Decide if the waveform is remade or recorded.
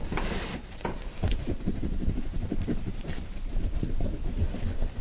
remade